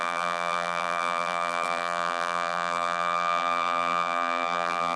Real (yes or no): no